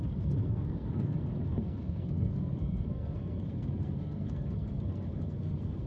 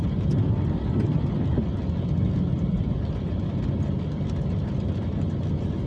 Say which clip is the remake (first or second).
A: first